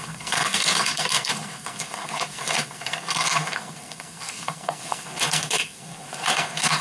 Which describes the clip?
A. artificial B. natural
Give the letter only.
A